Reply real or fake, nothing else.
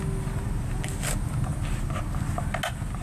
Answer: real